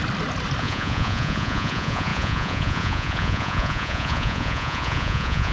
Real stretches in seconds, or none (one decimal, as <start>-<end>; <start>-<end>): 0.0-0.6